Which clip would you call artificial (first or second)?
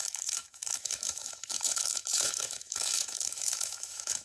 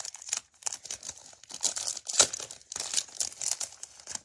first